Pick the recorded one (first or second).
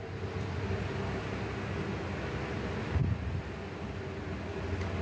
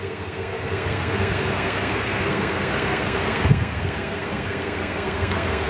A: first